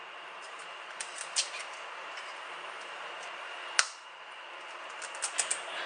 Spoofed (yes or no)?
no